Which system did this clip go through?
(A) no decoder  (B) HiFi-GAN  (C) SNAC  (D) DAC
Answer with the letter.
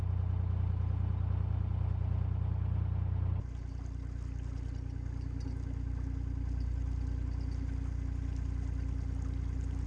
A